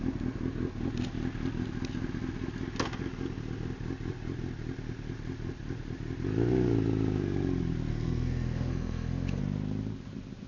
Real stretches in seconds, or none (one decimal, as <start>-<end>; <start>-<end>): 0.0-7.9; 9.4-10.5